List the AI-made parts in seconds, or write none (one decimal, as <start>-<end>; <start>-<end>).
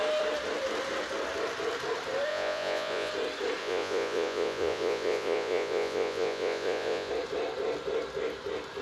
2.3-3.1; 3.6-7.1